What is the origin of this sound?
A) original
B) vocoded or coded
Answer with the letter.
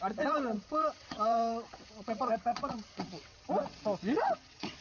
B